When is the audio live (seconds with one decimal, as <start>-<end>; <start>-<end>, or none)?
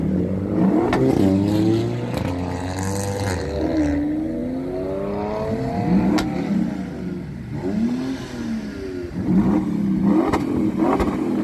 0.0-11.4